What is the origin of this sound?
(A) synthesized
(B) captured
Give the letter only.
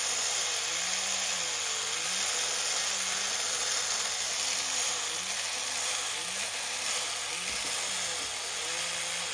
B